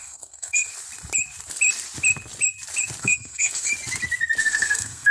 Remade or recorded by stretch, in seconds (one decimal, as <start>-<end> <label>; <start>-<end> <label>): 0.0-0.7 remade; 0.7-3.0 recorded; 3.0-3.7 remade; 3.7-4.4 recorded; 4.4-5.1 remade